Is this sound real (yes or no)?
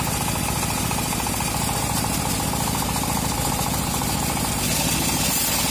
yes